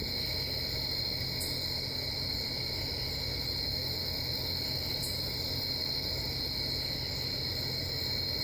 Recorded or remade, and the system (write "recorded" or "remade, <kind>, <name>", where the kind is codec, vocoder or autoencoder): recorded